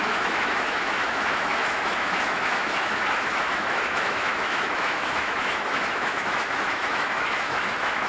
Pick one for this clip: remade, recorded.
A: remade